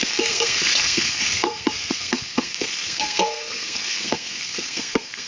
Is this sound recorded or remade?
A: remade